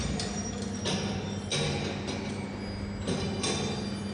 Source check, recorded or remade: recorded